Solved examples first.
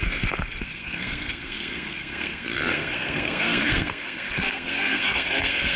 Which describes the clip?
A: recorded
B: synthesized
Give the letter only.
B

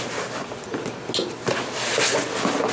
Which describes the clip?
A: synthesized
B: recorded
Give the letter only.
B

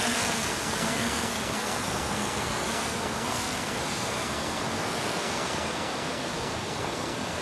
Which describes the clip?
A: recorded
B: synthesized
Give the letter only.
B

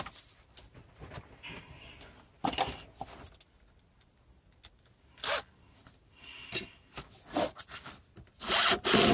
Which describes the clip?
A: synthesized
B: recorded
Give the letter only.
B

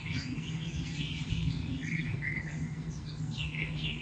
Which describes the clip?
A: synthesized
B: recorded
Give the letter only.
A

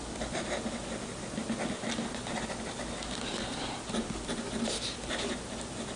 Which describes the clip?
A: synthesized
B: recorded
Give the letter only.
B